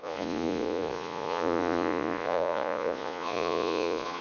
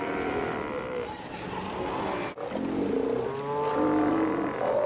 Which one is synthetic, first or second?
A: first